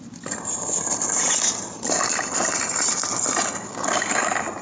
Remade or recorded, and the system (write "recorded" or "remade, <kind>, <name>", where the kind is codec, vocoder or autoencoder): recorded